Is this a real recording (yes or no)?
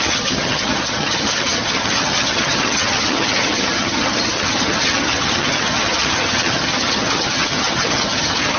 no